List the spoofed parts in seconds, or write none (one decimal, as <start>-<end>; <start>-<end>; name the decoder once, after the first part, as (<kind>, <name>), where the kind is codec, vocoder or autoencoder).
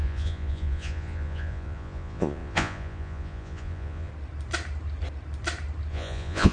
0.0-4.1 (vocoder, Vocos); 5.9-6.5